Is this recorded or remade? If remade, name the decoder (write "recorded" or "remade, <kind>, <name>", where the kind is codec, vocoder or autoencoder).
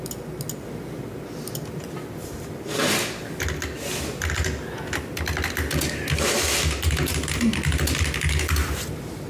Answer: recorded